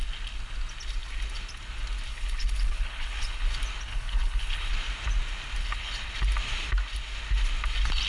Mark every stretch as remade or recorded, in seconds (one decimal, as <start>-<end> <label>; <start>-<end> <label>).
0.0-2.1 recorded; 2.1-3.5 remade; 3.5-3.9 recorded; 3.9-4.7 remade; 4.7-5.6 recorded; 5.6-6.1 remade; 6.1-8.1 recorded